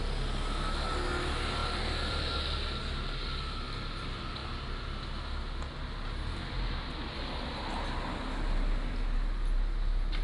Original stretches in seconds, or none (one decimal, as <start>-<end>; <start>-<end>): 0.0-1.6; 2.8-10.2